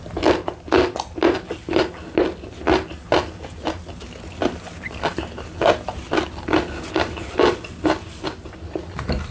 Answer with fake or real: real